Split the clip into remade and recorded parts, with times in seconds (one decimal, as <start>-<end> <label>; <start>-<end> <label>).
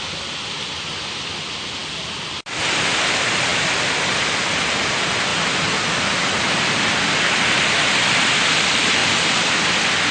0.0-10.1 recorded